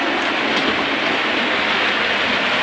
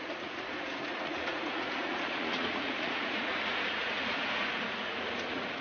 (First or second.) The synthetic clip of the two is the second